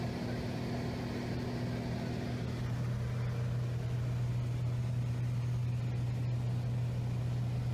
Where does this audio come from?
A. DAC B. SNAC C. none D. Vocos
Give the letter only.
C